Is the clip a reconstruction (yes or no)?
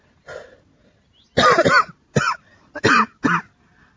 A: no